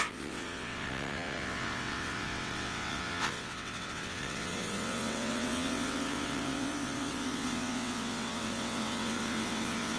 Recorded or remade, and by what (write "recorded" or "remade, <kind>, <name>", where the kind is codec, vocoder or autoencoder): remade, vocoder, WaveNeXt